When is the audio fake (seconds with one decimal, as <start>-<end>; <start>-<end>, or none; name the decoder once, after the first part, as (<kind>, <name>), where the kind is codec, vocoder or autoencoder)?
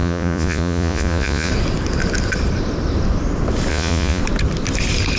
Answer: 0.0-1.5 (vocoder, Vocos); 3.7-4.2